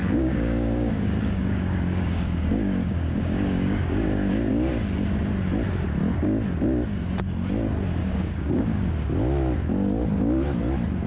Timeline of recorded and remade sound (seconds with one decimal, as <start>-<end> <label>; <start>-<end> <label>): 0.0-4.5 remade; 4.5-8.0 recorded; 8.0-8.9 remade; 8.9-11.1 recorded